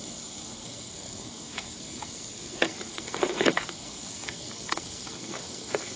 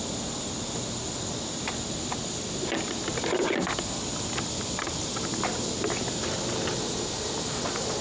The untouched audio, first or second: second